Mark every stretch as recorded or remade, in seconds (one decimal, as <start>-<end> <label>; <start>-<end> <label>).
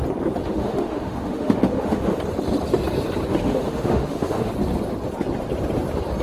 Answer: 0.0-0.4 recorded; 0.4-2.2 remade; 2.2-3.3 recorded; 3.3-4.5 remade; 4.5-6.2 recorded